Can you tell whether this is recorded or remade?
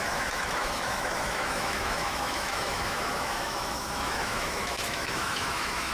remade